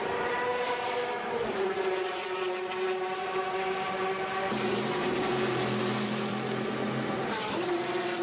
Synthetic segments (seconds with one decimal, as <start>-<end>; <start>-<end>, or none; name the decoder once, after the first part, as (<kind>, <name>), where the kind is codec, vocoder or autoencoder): 0.0-5.3 (vocoder, BigVGAN v2); 5.8-8.2